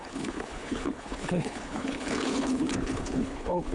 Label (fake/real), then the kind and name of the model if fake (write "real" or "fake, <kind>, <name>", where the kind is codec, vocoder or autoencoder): fake, codec, HILCodec